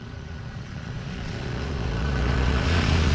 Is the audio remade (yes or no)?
yes